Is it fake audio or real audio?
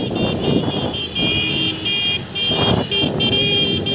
real